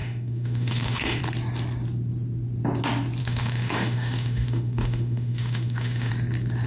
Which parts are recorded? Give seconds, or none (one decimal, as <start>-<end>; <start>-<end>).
1.2-3.2; 6.1-6.7